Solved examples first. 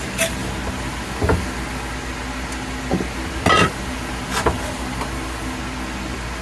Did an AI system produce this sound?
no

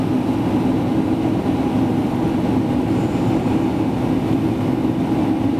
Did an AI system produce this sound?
no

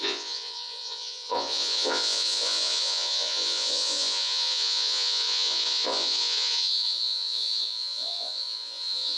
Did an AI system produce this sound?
yes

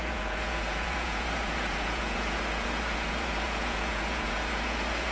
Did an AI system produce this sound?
yes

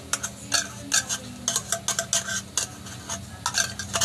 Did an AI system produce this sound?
no